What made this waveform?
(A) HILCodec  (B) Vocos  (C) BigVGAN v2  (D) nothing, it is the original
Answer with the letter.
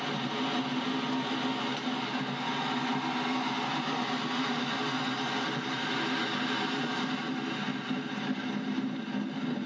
D